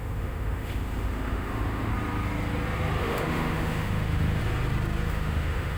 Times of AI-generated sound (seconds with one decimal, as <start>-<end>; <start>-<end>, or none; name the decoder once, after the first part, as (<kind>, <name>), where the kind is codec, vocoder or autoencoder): 0.0-1.9 (autoencoder, DAC-VAE); 3.0-4.4; 5.1-5.8